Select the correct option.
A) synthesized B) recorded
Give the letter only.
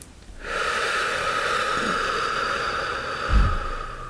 A